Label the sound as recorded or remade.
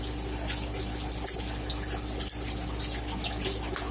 recorded